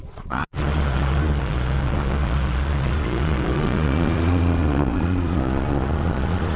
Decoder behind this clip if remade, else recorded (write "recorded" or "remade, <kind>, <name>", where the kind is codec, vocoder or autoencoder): remade, vocoder, Vocos